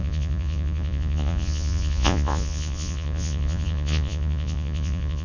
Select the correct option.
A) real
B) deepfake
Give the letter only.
B